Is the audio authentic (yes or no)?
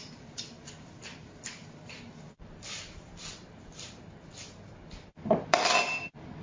no